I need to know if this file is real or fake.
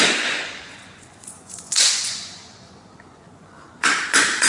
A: fake